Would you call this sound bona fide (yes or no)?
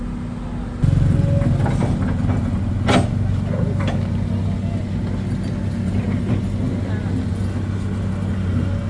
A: yes